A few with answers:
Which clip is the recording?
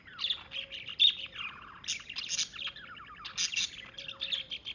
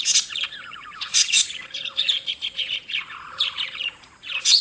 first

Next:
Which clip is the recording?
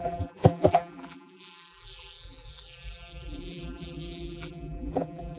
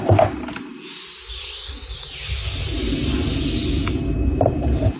second